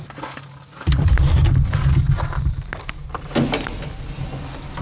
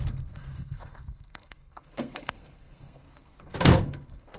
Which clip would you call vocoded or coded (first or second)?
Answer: second